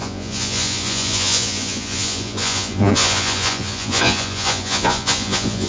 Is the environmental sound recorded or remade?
remade